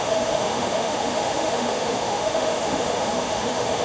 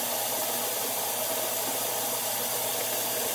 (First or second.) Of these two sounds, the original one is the second